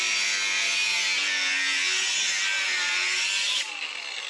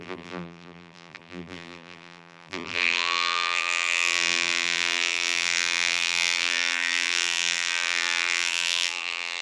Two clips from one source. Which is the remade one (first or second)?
second